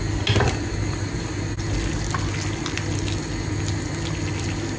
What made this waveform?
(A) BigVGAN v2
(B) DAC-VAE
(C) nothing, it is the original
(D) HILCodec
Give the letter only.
C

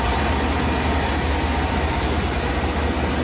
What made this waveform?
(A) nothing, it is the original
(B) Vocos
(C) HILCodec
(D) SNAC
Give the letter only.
A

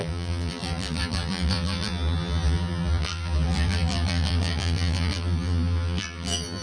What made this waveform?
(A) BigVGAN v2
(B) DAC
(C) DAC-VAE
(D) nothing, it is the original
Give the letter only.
A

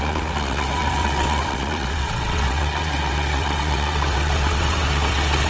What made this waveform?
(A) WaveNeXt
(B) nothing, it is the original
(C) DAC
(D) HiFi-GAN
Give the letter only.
A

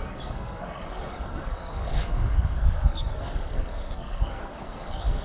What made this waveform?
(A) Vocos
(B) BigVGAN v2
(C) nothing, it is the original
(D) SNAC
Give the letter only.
D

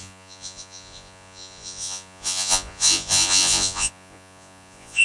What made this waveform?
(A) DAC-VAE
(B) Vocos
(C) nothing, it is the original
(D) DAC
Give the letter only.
B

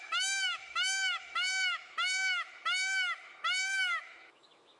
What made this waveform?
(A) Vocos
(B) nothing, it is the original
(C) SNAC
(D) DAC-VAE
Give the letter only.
D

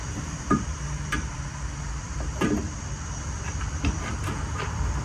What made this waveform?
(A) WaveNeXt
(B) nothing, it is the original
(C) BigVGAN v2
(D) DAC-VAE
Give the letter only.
C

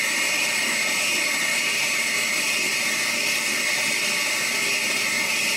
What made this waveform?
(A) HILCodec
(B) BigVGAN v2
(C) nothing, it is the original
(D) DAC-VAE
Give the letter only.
C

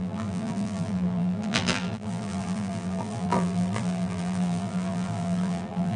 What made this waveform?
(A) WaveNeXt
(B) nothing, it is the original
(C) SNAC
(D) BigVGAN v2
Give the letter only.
D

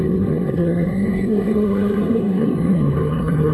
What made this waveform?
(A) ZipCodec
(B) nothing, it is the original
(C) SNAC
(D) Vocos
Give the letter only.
C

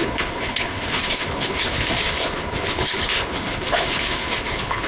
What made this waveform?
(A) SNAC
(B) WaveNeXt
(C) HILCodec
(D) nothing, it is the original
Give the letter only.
C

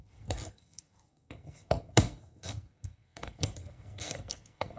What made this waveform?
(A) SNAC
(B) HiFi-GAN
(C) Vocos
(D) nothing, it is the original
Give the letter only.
A